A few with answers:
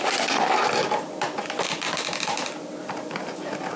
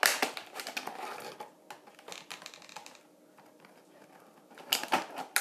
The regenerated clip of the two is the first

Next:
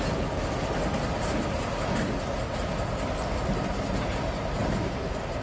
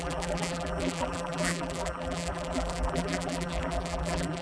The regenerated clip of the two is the second